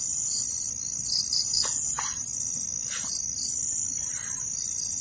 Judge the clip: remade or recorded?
recorded